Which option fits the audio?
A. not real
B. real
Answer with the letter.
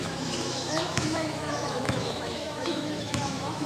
A